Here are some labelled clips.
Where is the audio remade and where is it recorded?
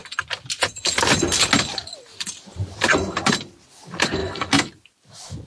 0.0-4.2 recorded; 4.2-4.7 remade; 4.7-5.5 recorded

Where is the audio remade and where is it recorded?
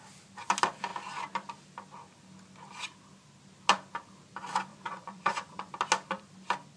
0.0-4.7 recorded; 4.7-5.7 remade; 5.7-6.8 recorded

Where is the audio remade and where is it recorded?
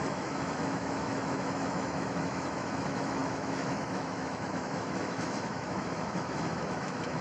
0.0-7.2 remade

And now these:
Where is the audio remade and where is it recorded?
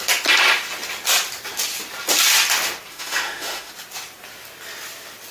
0.0-2.9 recorded; 2.9-3.7 remade; 3.7-5.3 recorded